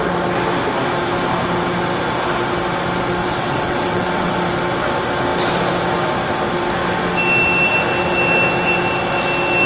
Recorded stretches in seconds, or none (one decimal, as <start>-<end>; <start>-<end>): 0.0-3.2; 4.3-9.7